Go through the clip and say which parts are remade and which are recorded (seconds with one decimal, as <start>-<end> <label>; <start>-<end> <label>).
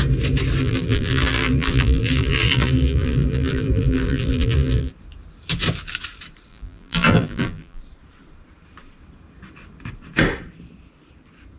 0.0-0.6 recorded; 0.6-4.9 remade; 4.9-6.5 recorded; 6.5-7.8 remade; 7.8-11.6 recorded